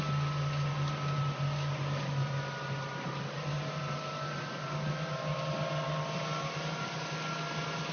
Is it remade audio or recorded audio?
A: recorded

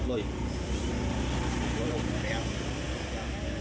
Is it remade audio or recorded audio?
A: recorded